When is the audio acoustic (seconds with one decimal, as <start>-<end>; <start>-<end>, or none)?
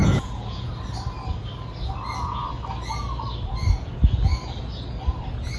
0.7-5.6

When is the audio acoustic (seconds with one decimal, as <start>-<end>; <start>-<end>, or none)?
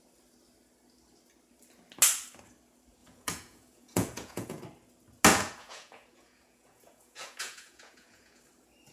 0.0-3.0; 4.6-5.3; 8.4-8.9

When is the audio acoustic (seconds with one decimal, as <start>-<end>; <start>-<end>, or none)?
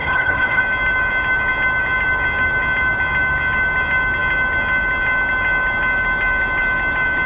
0.6-7.3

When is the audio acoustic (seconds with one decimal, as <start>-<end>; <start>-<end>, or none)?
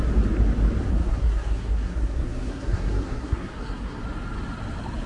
0.0-0.9; 4.0-5.1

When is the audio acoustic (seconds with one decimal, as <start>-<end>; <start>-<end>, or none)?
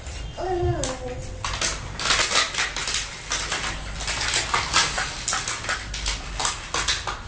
0.0-7.3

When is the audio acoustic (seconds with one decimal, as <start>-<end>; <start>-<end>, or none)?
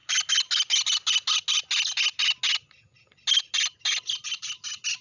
0.0-5.0